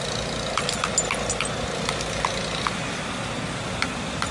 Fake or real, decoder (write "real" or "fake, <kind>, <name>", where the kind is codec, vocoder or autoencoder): real